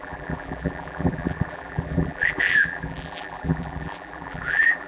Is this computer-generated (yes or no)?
yes